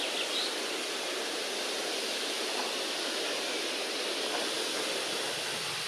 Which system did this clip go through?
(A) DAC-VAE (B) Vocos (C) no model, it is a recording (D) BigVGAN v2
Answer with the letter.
C